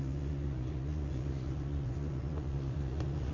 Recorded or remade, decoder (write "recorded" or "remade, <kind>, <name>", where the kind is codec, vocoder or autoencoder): remade, vocoder, Vocos